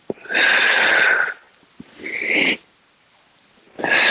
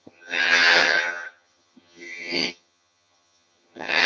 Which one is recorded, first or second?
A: first